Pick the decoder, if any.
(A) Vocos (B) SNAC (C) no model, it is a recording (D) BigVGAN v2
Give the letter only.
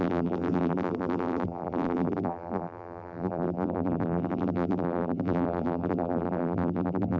D